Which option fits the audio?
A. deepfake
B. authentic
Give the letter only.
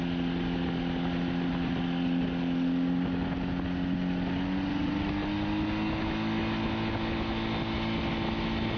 B